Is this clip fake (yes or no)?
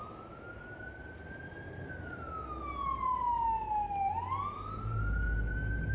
no